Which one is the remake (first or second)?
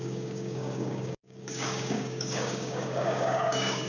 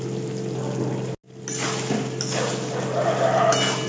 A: first